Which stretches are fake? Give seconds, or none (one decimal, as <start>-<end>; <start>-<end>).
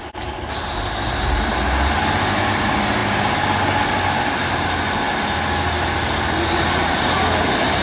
none